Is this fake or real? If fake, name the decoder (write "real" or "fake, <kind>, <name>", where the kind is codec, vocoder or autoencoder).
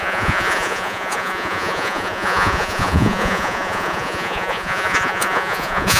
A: fake, vocoder, Vocos